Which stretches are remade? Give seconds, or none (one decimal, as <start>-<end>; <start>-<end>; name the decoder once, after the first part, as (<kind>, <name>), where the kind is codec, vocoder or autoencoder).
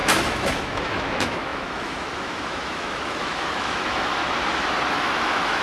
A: 0.0-4.2 (autoencoder, DAC-VAE); 4.9-5.6